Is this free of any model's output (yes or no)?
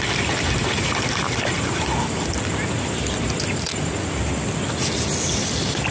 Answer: yes